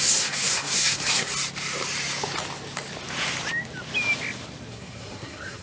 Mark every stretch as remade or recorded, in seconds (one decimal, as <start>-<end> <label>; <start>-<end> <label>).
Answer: 0.0-1.3 remade; 1.3-4.7 recorded; 4.7-5.6 remade